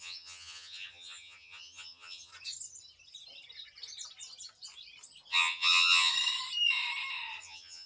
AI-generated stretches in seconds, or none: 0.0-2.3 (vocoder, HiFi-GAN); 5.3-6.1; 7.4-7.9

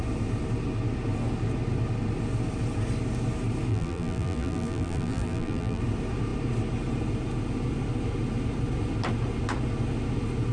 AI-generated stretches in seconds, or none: 3.7-5.8 (vocoder, BigVGAN v2)

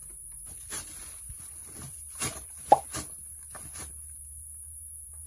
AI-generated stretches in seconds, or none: 1.6-2.6 (vocoder, BigVGAN v2); 3.3-3.9

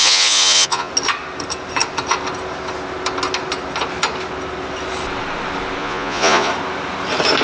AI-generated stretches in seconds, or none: 0.0-0.9 (vocoder, Vocos); 5.8-6.5

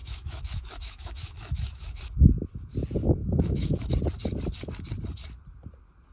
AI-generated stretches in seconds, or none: 0.0-2.3 (autoencoder, DAC-VAE); 3.2-3.9

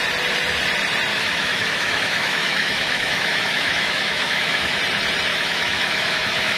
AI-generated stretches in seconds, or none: 1.1-4.8 (autoencoder, DAC-VAE); 5.3-6.6

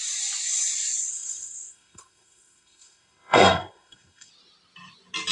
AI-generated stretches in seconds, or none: 1.1-4.3 (codec, SNAC)